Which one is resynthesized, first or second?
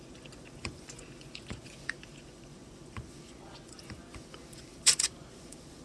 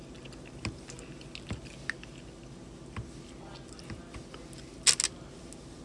first